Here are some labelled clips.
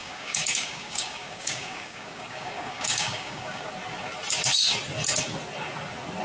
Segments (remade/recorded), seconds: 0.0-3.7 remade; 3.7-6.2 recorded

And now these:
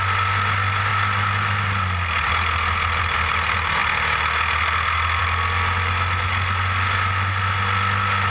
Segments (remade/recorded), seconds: 0.0-8.3 recorded

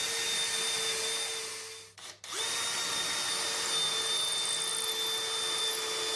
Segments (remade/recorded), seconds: 0.0-6.2 recorded

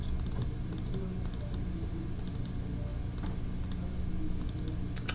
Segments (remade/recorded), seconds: 0.0-5.1 recorded

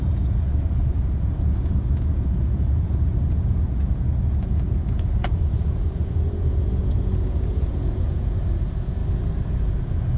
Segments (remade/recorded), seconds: 0.0-9.0 remade; 9.0-9.7 recorded; 9.7-10.2 remade

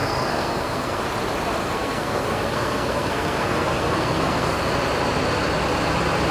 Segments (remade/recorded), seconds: 0.0-1.0 remade; 1.0-1.6 recorded; 1.6-4.6 remade; 4.6-6.3 recorded

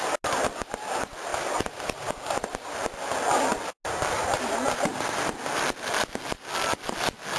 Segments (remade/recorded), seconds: 0.0-7.4 recorded